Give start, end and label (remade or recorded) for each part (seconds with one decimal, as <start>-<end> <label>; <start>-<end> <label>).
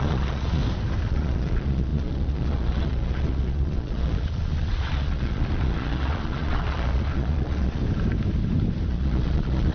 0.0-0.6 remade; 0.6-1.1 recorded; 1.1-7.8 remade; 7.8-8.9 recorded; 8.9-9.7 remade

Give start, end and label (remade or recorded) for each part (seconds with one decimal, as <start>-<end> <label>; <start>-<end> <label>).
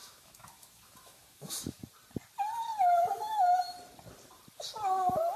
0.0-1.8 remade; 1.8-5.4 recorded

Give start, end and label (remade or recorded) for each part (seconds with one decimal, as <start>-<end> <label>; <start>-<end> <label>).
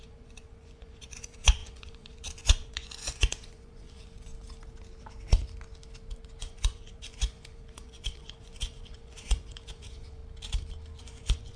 0.0-4.3 remade; 4.3-6.4 recorded; 6.4-10.2 remade; 10.2-11.0 recorded; 11.0-11.6 remade